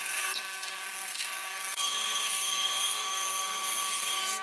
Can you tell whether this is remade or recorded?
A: remade